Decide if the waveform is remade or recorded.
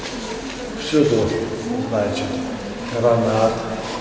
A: recorded